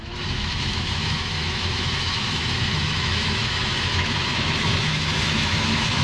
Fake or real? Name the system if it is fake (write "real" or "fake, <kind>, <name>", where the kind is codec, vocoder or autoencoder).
fake, autoencoder, DAC-VAE